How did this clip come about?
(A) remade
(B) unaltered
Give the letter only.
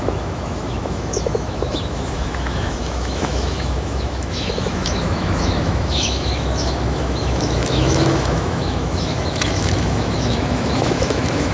A